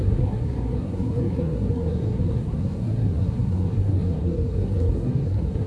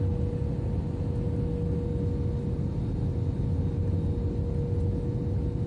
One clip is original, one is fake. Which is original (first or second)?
second